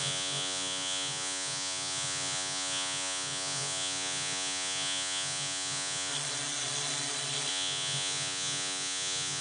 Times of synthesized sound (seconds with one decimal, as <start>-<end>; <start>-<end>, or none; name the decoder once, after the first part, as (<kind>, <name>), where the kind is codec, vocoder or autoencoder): 0.0-6.1 (vocoder, Vocos); 7.5-9.4